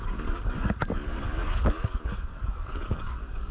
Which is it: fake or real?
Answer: fake